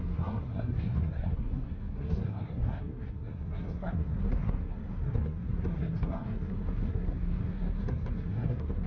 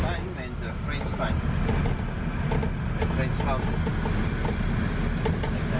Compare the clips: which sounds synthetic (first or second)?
first